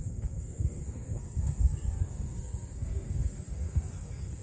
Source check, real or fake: fake